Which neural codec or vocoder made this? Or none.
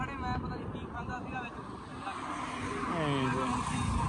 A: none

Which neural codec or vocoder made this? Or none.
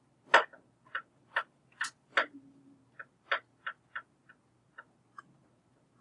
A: none